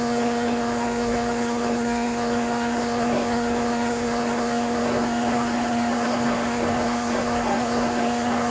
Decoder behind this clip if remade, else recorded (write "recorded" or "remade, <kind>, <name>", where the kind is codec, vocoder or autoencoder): remade, codec, SNAC